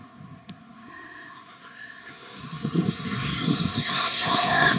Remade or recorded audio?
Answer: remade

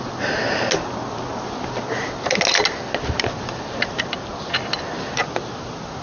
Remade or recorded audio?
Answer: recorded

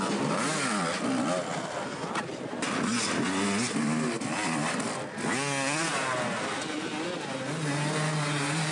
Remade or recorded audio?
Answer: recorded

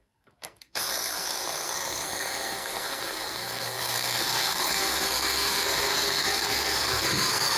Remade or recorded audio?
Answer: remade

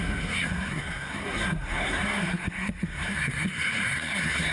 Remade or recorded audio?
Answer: remade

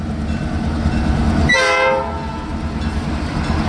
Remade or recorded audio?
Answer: recorded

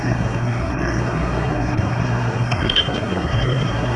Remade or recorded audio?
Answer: remade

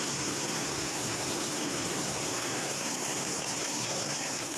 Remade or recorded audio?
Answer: remade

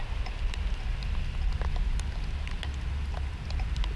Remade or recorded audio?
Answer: recorded